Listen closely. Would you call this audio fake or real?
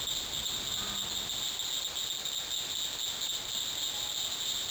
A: real